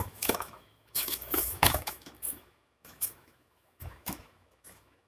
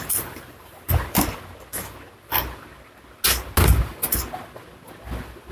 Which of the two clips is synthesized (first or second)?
first